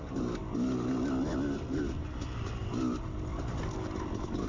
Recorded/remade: recorded